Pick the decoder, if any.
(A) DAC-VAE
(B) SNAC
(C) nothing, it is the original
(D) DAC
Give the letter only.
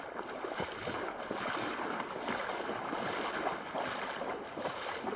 C